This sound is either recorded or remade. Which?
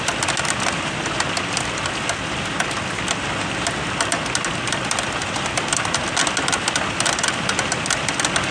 recorded